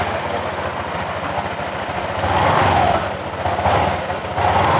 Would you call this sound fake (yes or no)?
no